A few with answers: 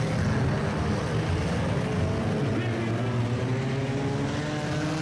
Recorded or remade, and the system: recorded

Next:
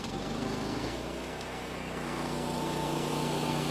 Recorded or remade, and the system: remade, codec, SNAC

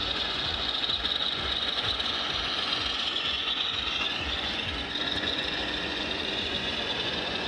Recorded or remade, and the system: remade, vocoder, Vocos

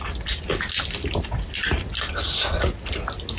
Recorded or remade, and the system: recorded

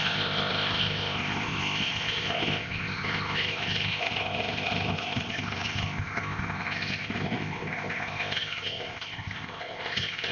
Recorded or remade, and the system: remade, codec, ZipCodec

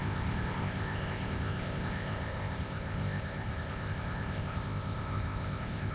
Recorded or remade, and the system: remade, codec, ZipCodec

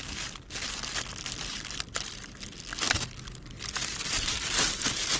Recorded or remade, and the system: recorded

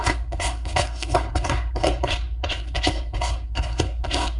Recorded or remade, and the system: remade, codec, SNAC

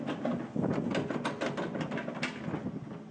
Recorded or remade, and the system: recorded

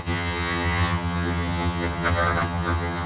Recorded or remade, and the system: remade, vocoder, HiFi-GAN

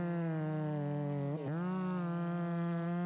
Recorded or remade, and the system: recorded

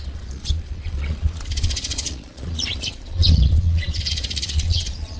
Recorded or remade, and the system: remade, vocoder, Vocos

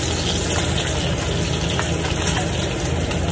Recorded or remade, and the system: recorded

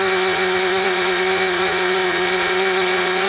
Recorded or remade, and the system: remade, vocoder, Vocos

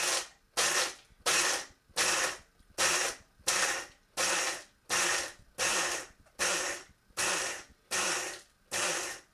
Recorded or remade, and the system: recorded